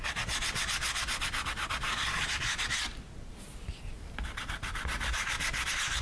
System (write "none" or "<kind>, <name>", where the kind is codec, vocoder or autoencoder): none